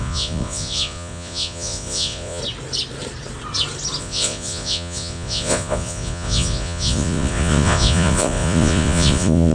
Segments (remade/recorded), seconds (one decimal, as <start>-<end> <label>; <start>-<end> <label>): 0.0-2.4 remade; 2.4-4.0 recorded; 4.0-9.5 remade